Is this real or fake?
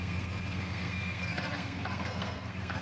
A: fake